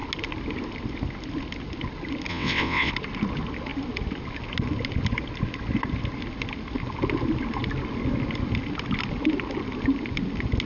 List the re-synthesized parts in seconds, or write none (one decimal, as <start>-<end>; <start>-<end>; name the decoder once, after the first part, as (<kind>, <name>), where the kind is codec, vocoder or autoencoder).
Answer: 2.3-2.9 (vocoder, WaveNeXt)